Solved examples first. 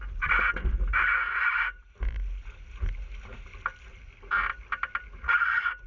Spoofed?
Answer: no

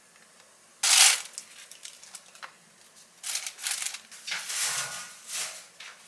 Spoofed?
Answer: no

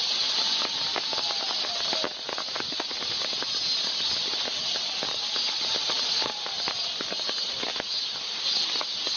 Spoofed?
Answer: no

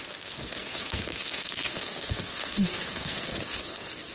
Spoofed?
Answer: yes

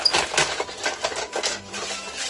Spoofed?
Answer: no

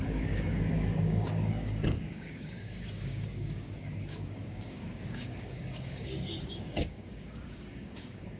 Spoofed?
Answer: yes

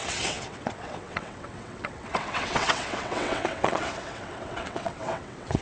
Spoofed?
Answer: yes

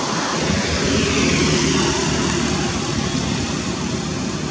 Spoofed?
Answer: no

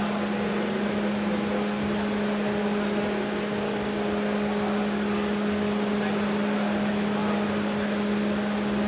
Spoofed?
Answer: no